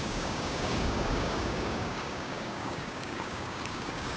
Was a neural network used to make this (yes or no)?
yes